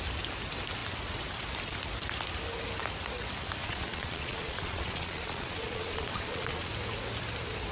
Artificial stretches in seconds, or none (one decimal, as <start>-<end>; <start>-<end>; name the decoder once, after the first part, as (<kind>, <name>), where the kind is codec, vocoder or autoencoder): 3.6-6.7 (vocoder, Vocos)